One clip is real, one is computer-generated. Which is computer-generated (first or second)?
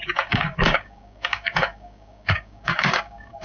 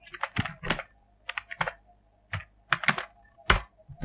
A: first